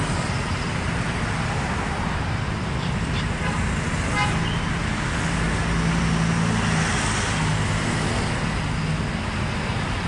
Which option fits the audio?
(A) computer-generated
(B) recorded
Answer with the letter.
B